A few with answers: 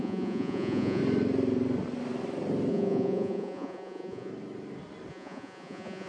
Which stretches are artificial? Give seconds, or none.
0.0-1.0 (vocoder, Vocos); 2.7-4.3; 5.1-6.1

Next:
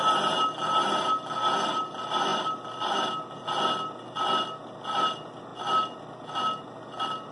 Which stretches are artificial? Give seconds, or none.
none

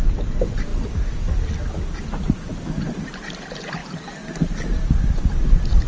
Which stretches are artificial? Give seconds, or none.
none

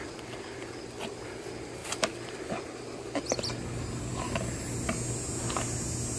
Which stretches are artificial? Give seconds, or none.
4.1-4.9 (vocoder, BigVGAN v2)

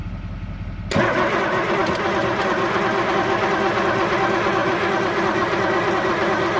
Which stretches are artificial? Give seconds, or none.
none

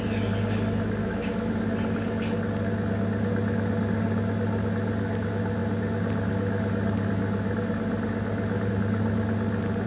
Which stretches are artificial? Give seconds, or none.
1.0-1.5 (autoencoder, DAC-VAE)

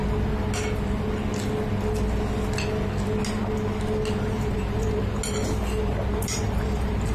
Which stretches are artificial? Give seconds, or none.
4.3-5.2 (vocoder, BigVGAN v2); 6.1-7.1

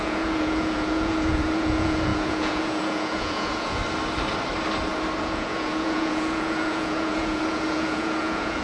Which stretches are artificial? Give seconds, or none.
0.0-3.8 (vocoder, Vocos); 5.2-8.6